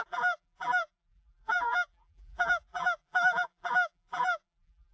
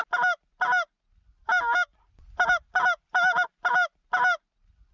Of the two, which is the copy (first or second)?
first